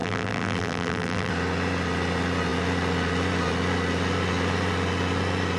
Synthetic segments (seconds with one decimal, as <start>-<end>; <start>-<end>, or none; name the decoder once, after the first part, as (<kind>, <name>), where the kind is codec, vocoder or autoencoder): 0.0-1.3 (vocoder, BigVGAN v2)